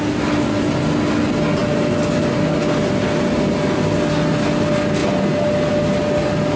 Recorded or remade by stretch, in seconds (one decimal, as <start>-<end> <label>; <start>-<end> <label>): 0.0-6.6 recorded